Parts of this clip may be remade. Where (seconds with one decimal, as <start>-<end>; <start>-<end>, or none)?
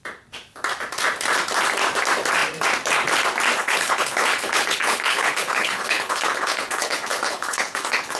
3.6-8.2